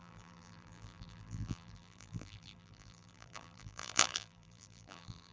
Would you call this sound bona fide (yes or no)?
no